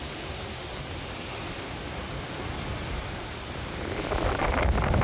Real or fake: real